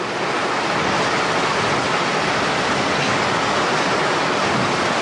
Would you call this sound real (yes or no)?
yes